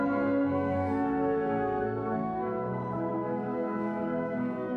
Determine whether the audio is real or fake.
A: fake